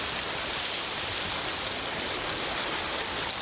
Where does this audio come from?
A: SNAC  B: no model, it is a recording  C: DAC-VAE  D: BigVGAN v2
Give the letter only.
B